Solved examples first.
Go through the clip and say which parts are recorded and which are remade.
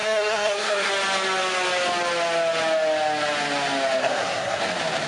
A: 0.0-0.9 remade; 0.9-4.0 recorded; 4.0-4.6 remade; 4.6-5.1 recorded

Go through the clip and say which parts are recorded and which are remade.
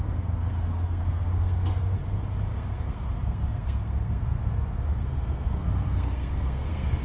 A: 0.0-2.0 remade; 2.0-2.5 recorded; 2.5-7.0 remade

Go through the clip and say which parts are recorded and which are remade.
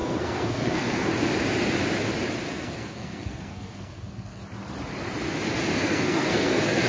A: 0.0-1.1 remade; 1.1-2.5 recorded; 2.5-4.4 remade; 4.4-5.7 recorded; 5.7-6.9 remade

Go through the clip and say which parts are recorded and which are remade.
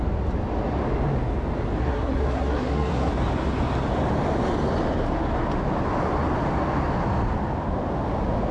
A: 0.0-1.8 recorded; 1.8-3.1 remade; 3.1-8.5 recorded